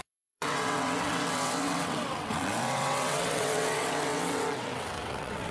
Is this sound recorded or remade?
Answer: remade